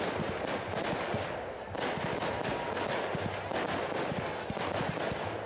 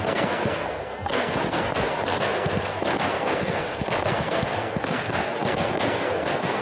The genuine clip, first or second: first